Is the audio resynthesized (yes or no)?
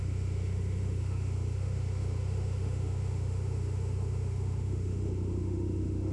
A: yes